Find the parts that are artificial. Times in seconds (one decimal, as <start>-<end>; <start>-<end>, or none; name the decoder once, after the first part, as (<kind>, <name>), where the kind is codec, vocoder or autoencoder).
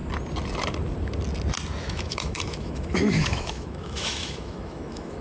1.8-5.2 (autoencoder, DAC-VAE)